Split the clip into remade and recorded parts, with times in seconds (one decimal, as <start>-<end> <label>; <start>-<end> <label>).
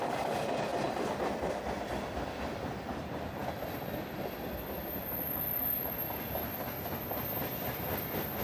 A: 0.0-8.4 recorded